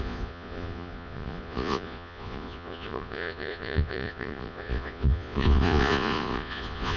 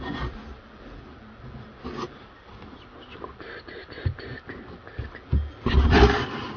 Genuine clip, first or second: second